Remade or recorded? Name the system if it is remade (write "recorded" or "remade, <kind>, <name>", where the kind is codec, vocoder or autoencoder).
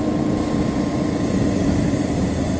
recorded